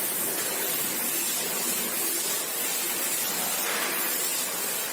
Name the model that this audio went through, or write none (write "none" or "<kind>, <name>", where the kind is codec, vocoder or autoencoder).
none